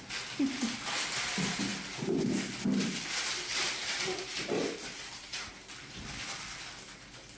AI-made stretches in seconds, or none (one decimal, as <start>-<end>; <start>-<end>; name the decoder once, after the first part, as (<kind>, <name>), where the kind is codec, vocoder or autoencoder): 3.5-5.5 (vocoder, BigVGAN v2)